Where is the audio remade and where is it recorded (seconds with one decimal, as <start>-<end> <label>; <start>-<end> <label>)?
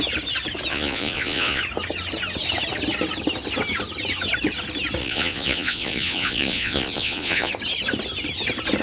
0.0-0.7 recorded; 0.7-1.6 remade; 1.6-5.0 recorded; 5.0-7.5 remade; 7.5-8.8 recorded